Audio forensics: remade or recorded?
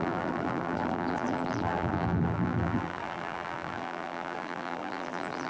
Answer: remade